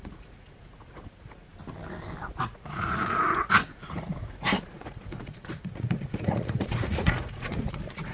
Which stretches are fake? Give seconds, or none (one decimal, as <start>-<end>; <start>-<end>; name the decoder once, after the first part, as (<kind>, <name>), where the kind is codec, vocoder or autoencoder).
0.0-1.5 (vocoder, Vocos); 2.2-8.1